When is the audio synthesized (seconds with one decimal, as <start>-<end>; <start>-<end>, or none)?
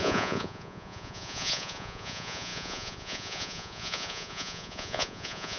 0.0-5.6